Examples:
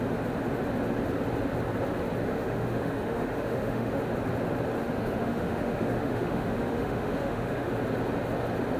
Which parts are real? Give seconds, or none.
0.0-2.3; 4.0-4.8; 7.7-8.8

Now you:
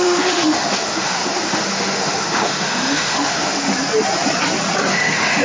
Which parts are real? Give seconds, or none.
3.7-4.9

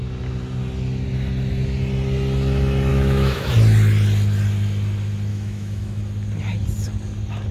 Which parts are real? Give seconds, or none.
0.0-2.9; 3.5-5.3; 6.0-7.5